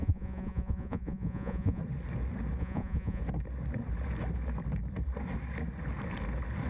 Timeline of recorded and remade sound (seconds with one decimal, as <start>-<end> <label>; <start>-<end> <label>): 0.0-1.8 remade; 1.8-2.6 recorded; 2.6-3.2 remade; 3.2-6.7 recorded